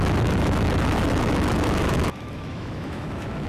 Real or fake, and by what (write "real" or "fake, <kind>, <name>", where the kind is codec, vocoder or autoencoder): fake, autoencoder, DAC-VAE